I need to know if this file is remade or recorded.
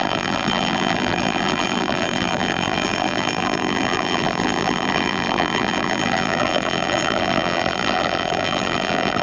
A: remade